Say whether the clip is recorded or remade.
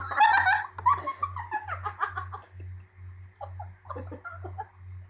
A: recorded